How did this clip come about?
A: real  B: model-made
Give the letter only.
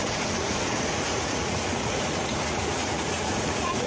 B